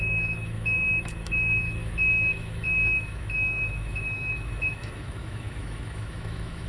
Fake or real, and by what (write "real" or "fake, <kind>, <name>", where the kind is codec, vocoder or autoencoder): fake, autoencoder, DAC-VAE